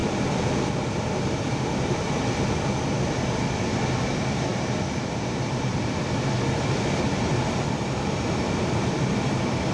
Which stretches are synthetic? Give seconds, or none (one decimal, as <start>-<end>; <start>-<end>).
none